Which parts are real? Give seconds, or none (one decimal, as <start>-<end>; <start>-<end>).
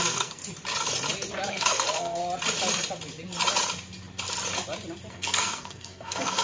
0.4-1.5; 2.2-5.1